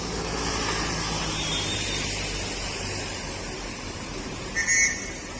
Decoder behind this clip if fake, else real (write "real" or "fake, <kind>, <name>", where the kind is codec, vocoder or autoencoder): real